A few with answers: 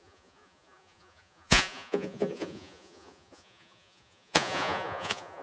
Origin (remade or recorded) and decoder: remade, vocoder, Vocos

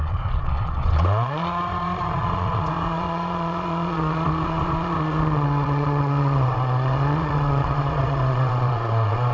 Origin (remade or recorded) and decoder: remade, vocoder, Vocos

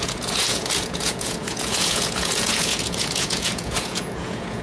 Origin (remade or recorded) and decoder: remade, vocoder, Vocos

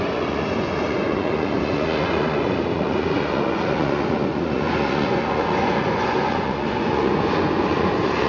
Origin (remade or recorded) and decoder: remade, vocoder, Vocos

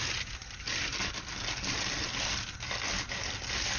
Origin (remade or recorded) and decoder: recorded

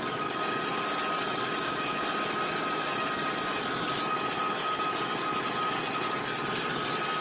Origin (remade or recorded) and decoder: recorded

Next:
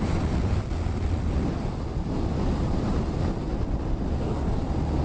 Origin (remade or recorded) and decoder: recorded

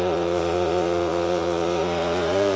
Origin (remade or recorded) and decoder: remade, vocoder, Vocos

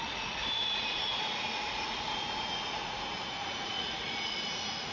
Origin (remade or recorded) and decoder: remade, vocoder, Vocos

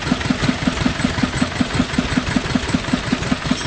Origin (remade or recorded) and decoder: recorded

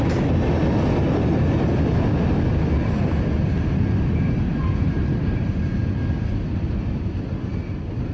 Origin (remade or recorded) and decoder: recorded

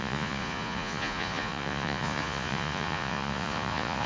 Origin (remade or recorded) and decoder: remade, vocoder, Vocos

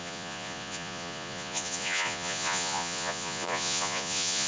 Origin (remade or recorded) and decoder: remade, vocoder, Vocos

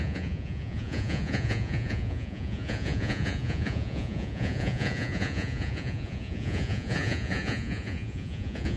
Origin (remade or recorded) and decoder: remade, vocoder, Vocos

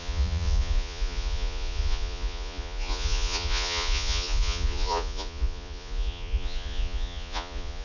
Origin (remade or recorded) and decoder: remade, vocoder, Vocos